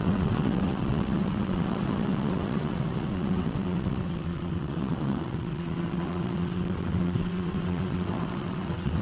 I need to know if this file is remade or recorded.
remade